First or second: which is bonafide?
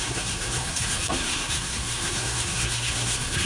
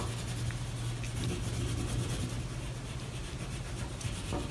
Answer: second